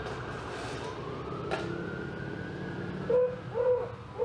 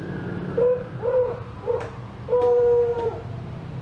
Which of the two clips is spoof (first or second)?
second